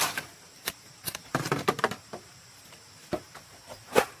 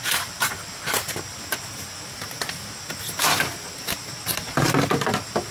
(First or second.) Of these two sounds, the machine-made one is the first